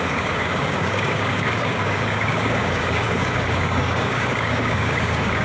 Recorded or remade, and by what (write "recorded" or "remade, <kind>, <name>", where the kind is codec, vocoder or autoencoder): remade, codec, DAC